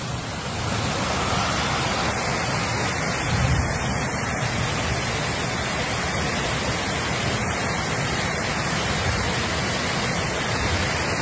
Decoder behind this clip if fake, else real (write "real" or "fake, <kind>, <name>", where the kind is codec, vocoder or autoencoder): real